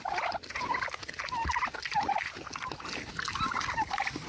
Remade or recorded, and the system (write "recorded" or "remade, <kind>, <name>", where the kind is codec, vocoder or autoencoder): recorded